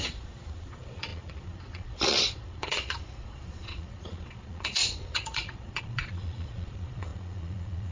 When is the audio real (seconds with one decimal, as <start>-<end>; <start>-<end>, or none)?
none